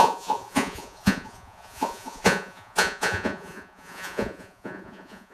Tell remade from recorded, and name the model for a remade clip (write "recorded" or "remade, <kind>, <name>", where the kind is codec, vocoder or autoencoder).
remade, vocoder, Vocos